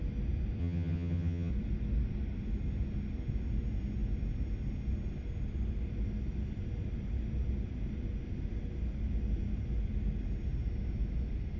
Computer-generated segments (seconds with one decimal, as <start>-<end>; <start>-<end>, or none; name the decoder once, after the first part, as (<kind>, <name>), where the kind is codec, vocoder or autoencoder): 0.6-1.5 (vocoder, HiFi-GAN)